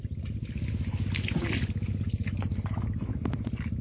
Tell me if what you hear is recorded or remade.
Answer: recorded